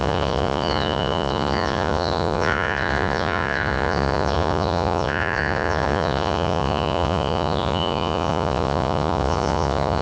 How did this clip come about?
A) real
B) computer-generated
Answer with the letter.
B